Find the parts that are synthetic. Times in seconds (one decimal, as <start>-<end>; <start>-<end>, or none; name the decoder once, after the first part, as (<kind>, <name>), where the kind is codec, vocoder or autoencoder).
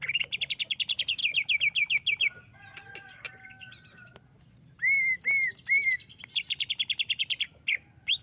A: none